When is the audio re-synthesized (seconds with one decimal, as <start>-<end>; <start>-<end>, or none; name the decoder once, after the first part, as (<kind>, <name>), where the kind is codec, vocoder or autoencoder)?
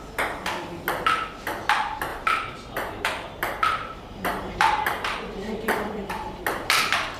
2.1-6.4 (vocoder, BigVGAN v2)